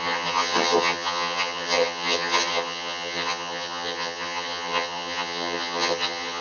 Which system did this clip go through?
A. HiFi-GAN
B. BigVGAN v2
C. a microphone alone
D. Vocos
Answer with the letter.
A